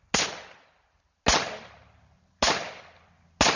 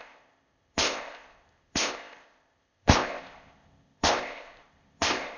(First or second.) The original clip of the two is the first